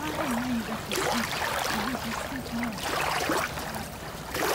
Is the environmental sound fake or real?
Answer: real